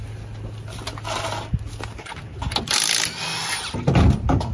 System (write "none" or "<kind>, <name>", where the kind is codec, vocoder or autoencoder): none